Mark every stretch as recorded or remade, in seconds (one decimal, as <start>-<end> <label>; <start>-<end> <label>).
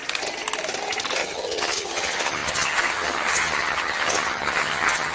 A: 0.0-1.2 recorded; 1.2-5.1 remade